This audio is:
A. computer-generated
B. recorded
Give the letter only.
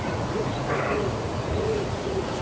A